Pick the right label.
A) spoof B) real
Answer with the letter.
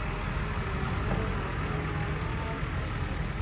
B